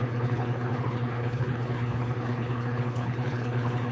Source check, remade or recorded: remade